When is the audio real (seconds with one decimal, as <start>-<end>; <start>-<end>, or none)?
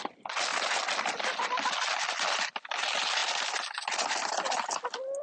0.0-5.2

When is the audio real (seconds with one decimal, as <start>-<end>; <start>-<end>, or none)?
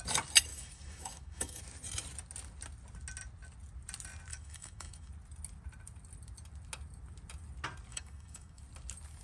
0.0-0.5; 1.6-4.3; 5.1-7.9; 8.6-9.2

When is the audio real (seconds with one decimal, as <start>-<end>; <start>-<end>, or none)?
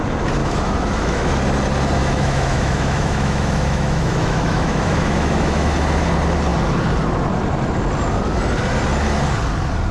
0.0-0.4; 1.3-2.0; 5.7-9.9